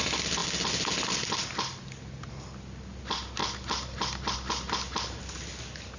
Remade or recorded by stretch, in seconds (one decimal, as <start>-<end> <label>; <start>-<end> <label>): 0.0-6.0 recorded